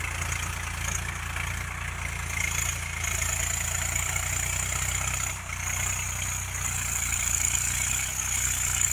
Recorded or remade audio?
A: recorded